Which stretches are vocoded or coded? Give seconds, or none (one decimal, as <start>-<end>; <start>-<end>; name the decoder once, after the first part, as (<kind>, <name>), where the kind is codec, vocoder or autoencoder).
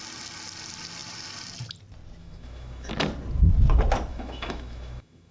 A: 2.2-2.9 (autoencoder, DAC-VAE); 4.1-5.3